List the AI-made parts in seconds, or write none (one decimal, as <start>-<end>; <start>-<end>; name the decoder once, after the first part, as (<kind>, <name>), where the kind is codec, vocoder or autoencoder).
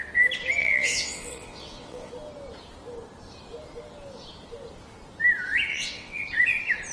0.6-2.1 (vocoder, WaveNeXt); 5.7-6.2